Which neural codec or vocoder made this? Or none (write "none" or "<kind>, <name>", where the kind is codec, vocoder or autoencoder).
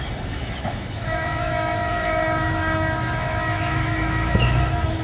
autoencoder, DAC-VAE